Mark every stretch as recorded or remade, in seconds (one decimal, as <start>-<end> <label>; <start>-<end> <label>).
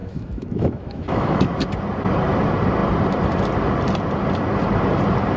0.0-1.5 remade; 1.5-5.4 recorded